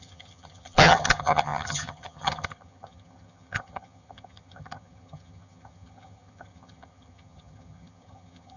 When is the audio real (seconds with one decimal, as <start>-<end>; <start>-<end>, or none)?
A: none